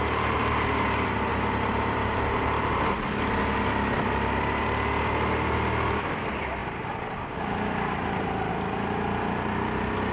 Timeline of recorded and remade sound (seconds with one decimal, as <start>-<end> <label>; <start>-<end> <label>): 0.0-1.3 recorded; 1.3-2.4 remade; 2.4-10.1 recorded